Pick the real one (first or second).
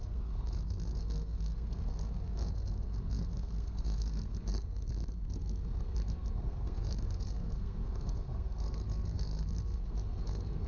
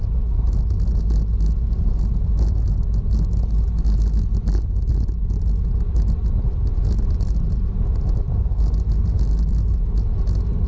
second